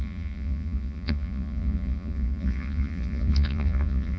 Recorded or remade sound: remade